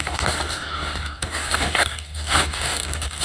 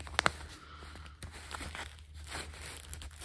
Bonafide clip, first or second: second